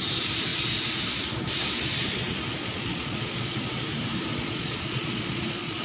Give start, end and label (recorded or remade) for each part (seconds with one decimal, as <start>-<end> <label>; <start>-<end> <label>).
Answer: 0.0-2.6 recorded; 2.6-3.6 remade; 3.6-4.3 recorded; 4.3-5.8 remade